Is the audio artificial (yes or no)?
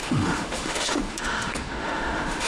yes